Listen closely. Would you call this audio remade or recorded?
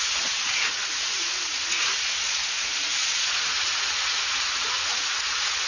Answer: remade